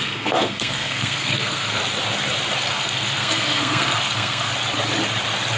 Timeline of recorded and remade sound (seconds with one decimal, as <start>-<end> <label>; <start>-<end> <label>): 0.0-1.8 remade; 1.8-2.7 recorded; 2.7-4.5 remade; 4.5-5.6 recorded